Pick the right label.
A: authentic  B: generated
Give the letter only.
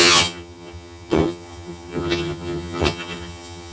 B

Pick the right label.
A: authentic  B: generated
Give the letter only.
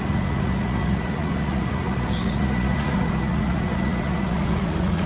B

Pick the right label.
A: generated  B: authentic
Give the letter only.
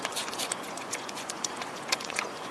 A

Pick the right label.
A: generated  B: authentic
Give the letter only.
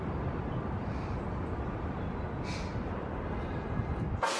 B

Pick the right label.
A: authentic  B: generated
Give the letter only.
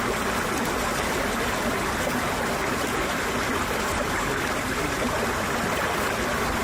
A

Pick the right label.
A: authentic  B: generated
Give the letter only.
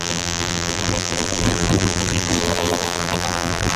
B